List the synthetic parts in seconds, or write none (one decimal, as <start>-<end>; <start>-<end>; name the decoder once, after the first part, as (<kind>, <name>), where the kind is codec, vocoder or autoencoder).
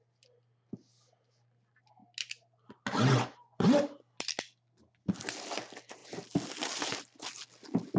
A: none